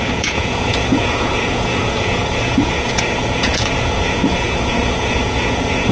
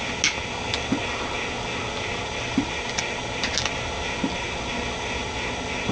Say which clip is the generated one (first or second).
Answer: first